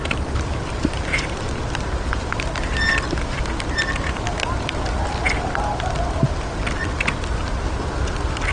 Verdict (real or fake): real